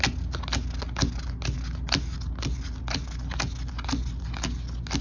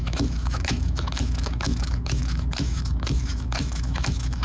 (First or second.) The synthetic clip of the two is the second